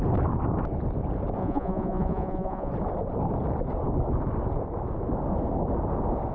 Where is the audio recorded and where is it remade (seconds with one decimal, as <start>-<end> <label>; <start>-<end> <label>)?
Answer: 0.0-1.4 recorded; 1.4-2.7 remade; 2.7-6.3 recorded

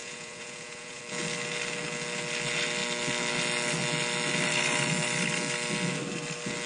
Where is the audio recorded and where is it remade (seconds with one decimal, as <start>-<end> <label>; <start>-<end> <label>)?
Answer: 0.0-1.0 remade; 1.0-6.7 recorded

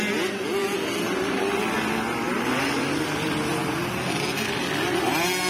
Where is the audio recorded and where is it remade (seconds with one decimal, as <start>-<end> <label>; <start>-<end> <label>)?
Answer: 0.0-5.5 recorded

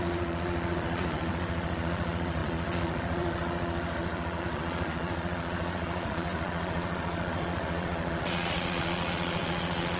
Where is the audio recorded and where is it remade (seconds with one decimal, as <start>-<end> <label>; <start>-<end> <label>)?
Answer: 0.0-10.0 remade

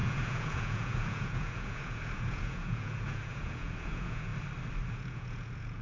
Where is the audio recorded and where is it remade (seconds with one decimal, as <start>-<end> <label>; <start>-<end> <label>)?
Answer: 0.0-4.3 remade; 4.3-4.9 recorded; 4.9-5.8 remade

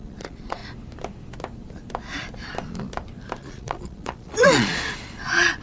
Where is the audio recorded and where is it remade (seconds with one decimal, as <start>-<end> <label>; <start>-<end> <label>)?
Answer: 0.0-0.6 remade; 0.6-3.4 recorded; 3.4-5.6 remade